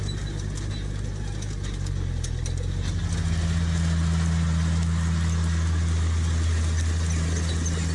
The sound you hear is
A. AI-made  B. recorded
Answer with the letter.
B